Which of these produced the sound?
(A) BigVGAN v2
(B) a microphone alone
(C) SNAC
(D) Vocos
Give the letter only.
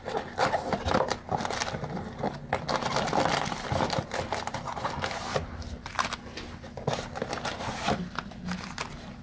B